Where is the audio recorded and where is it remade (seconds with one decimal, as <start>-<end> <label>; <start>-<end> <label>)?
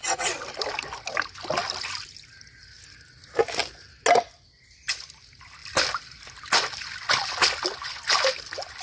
0.0-8.8 recorded